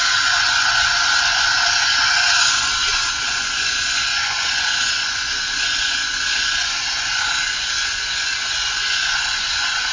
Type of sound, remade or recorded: remade